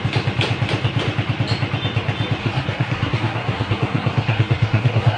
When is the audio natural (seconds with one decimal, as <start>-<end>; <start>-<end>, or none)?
0.0-2.4